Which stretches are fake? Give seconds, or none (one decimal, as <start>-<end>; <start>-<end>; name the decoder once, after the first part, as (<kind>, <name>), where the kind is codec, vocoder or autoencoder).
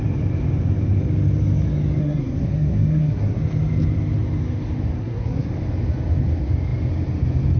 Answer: 2.0-3.4 (codec, SNAC); 5.0-5.5